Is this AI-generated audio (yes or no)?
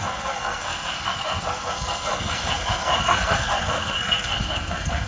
yes